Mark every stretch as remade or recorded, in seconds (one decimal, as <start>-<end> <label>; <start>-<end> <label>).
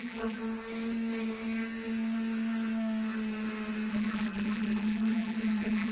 0.0-0.4 remade; 0.4-3.9 recorded; 3.9-5.9 remade